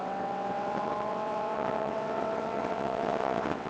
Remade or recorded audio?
remade